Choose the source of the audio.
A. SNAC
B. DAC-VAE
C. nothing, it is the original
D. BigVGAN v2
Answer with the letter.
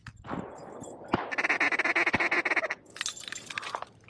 C